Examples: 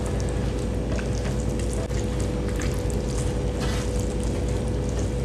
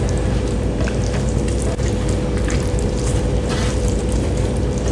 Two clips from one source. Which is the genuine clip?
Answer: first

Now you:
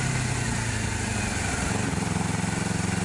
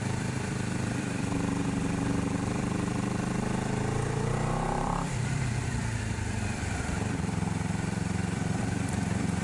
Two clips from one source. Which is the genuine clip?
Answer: first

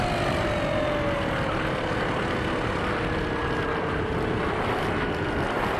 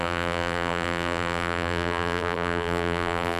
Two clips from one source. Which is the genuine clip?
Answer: first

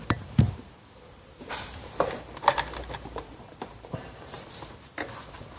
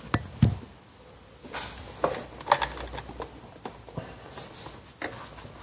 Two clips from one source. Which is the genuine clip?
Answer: second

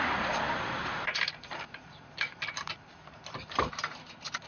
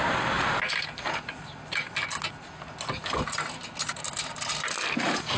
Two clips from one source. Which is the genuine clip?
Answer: second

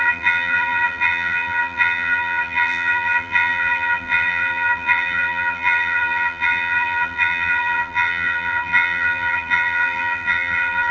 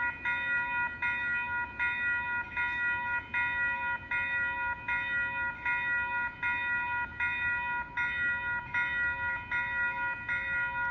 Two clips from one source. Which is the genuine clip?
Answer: second